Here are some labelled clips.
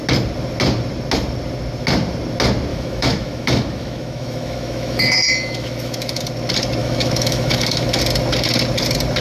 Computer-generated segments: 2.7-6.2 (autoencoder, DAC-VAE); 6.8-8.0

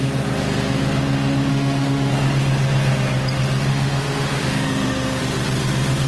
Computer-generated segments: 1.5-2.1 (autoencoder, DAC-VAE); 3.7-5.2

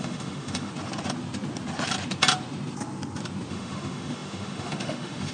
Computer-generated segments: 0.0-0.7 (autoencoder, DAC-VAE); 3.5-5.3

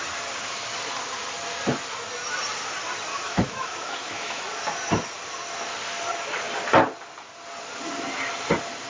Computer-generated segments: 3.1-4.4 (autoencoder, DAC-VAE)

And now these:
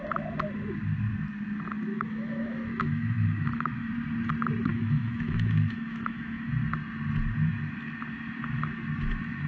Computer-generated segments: 1.9-3.9 (autoencoder, DAC-VAE); 4.7-6.5

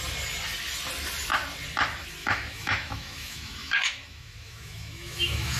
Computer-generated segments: 2.2-5.6 (autoencoder, DAC-VAE)

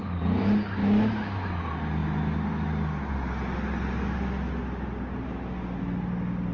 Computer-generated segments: 0.8-1.5 (autoencoder, DAC-VAE)